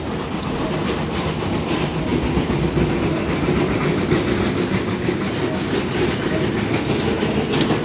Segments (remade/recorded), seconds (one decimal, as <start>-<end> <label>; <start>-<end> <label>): 0.0-7.8 recorded